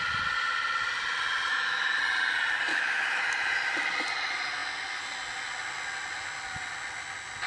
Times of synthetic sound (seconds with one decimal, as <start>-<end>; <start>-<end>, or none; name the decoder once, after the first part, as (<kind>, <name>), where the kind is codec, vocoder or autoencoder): 1.5-2.0 (autoencoder, DAC-VAE); 2.7-3.3